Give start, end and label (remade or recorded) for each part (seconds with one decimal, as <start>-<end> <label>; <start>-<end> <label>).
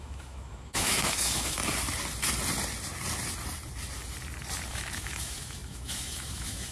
0.0-1.6 remade; 1.6-4.7 recorded; 4.7-6.7 remade